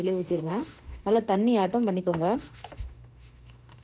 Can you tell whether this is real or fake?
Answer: fake